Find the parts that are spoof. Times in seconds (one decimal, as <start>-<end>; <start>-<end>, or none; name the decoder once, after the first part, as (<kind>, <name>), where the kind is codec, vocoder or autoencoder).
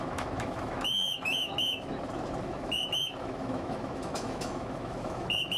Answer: 0.0-1.9 (autoencoder, DAC-VAE); 2.4-5.6